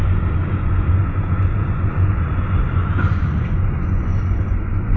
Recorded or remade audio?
remade